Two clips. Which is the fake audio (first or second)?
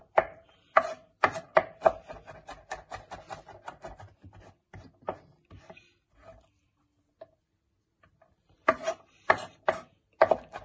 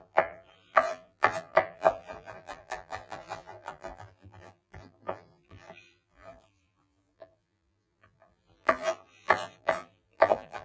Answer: second